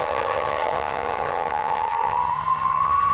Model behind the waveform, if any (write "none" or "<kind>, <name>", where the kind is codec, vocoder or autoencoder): vocoder, HiFi-GAN